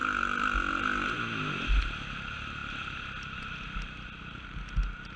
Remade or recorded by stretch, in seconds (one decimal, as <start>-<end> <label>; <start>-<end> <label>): 0.0-0.7 remade; 0.7-2.6 recorded; 2.6-4.3 remade; 4.3-5.2 recorded